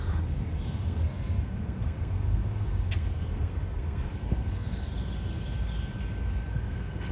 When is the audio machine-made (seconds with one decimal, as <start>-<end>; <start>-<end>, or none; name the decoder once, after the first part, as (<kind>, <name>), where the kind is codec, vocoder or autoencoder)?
0.0-4.9 (codec, SNAC); 6.5-7.1